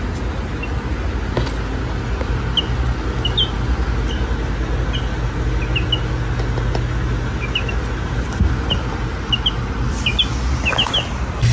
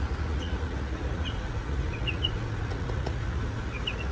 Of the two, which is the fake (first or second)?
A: second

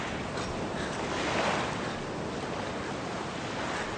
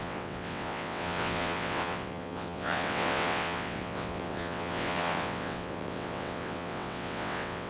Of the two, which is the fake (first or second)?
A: second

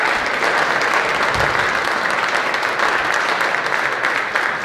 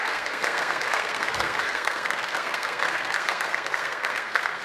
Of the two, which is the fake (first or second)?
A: second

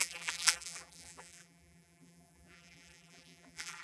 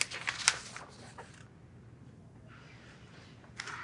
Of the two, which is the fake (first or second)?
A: first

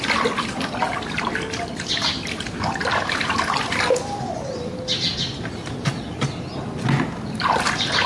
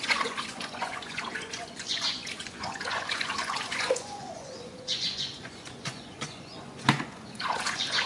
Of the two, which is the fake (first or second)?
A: second